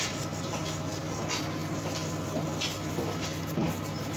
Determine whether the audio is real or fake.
real